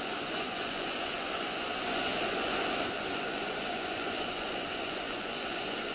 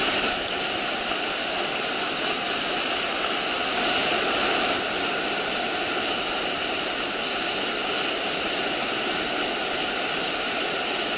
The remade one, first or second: first